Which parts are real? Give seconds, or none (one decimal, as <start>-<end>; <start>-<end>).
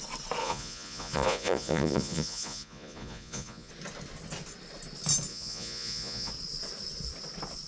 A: 0.0-0.4; 3.7-5.3; 6.3-7.7